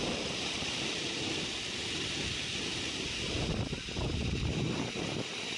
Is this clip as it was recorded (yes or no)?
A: no